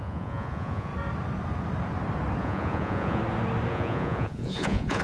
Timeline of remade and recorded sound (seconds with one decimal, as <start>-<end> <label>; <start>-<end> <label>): 0.0-0.9 remade; 0.9-2.4 recorded; 2.4-3.2 remade; 3.2-3.7 recorded; 3.7-5.0 remade